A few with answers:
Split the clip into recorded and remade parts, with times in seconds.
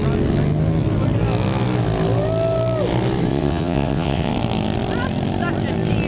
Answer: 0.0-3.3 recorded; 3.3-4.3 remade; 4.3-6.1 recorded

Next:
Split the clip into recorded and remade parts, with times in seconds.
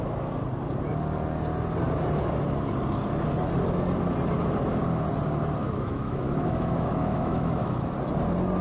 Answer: 0.0-5.6 recorded; 5.6-7.9 remade; 7.9-8.6 recorded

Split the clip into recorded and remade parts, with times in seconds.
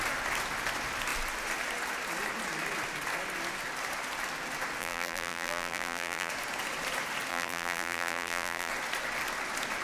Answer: 0.0-4.8 recorded; 4.8-6.3 remade; 6.3-7.3 recorded; 7.3-8.7 remade; 8.7-9.8 recorded